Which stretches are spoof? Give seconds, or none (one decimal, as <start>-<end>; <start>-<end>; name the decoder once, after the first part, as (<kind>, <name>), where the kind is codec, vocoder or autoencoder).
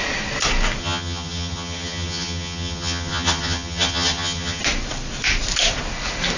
0.8-4.6 (vocoder, HiFi-GAN)